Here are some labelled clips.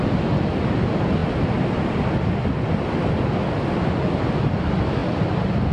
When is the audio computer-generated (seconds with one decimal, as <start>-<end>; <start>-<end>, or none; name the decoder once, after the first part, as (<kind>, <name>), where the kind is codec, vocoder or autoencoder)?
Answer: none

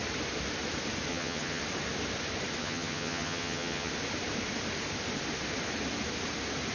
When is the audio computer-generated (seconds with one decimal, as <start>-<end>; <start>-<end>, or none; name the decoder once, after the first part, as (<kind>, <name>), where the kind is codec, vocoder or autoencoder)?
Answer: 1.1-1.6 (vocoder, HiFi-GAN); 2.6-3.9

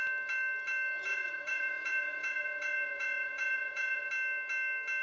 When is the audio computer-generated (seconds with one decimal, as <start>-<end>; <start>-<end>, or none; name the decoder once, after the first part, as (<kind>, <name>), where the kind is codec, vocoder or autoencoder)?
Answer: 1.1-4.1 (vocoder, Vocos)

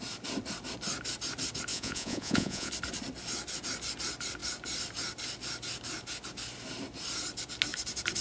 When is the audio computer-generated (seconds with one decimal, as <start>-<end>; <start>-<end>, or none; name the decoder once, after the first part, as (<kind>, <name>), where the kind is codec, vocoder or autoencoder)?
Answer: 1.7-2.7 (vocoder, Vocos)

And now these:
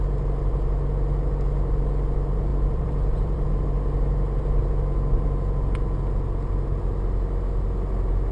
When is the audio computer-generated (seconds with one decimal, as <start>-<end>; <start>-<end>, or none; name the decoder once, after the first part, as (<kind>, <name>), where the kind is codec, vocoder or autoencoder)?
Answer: 2.5-3.5 (vocoder, BigVGAN v2)

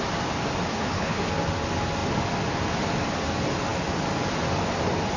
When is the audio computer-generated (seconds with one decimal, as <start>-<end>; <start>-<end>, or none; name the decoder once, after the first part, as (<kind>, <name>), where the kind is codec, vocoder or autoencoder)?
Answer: 0.7-1.3 (codec, HILCodec)

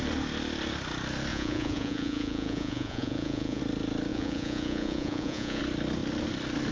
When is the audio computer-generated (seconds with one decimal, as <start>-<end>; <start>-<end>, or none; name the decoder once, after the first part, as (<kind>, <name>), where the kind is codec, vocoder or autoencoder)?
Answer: 1.3-3.6 (vocoder, Vocos); 4.1-5.6